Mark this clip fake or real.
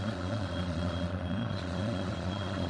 fake